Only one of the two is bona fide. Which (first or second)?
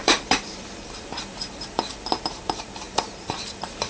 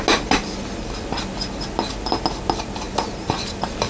second